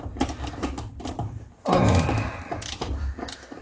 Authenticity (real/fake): real